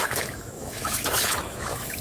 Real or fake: fake